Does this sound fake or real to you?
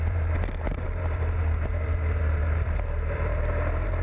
fake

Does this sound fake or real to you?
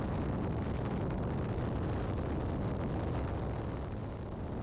real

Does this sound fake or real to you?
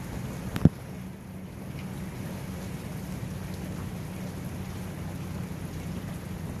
real